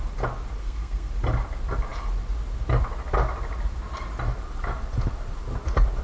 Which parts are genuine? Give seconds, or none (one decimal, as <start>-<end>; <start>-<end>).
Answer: 0.0-0.6; 1.1-6.0